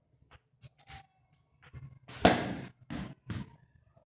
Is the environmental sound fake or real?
real